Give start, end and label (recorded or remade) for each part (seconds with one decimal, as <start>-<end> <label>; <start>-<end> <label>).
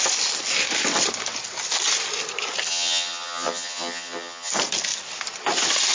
0.0-2.7 recorded; 2.7-4.5 remade; 4.5-5.9 recorded